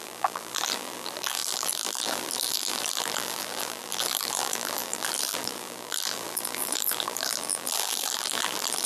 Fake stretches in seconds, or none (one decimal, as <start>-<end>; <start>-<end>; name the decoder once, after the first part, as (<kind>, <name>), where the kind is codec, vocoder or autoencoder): 0.0-8.9 (vocoder, BigVGAN v2)